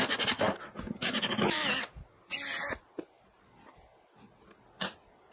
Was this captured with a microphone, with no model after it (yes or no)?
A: yes